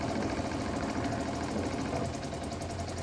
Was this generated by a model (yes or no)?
no